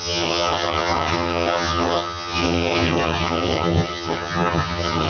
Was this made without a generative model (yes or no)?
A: no